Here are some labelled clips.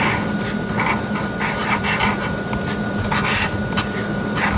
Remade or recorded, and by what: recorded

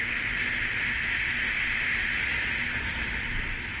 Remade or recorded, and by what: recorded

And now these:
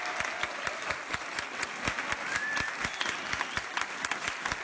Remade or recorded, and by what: recorded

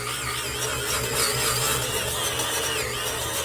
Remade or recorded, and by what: recorded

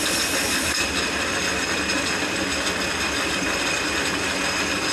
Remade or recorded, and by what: recorded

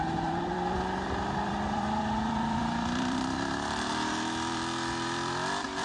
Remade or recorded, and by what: remade, vocoder, BigVGAN v2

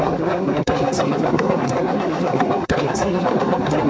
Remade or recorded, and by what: remade, codec, SNAC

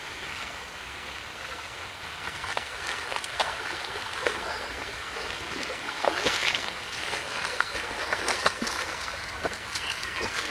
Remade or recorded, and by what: remade, codec, SNAC